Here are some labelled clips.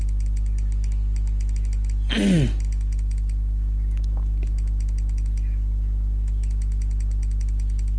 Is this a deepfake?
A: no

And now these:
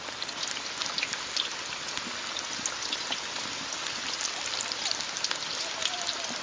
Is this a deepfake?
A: no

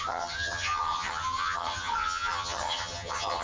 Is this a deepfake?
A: yes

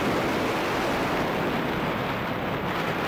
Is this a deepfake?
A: no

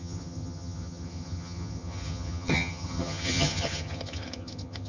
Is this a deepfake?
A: yes